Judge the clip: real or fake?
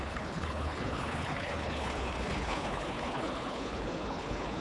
fake